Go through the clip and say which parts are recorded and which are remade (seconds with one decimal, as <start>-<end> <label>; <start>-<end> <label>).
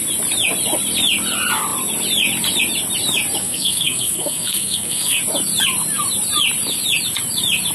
0.0-3.4 recorded; 3.4-5.2 remade; 5.2-7.7 recorded